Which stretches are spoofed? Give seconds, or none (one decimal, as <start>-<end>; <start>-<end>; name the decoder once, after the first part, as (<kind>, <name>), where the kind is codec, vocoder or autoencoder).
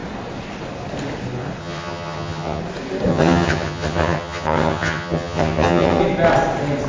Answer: 1.6-2.6 (vocoder, HiFi-GAN); 3.1-6.0